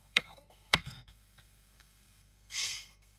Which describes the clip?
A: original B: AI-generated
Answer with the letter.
B